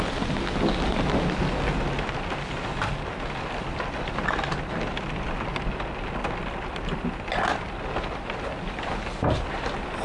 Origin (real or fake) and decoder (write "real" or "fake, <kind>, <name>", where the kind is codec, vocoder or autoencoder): real